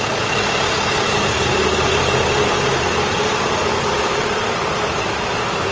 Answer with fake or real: real